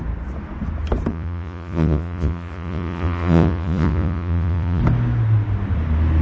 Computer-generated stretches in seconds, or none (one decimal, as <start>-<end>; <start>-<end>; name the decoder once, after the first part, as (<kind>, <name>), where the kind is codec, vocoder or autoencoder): 1.1-4.8 (vocoder, Vocos)